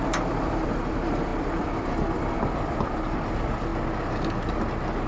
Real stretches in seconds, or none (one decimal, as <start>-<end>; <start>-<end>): 3.7-5.1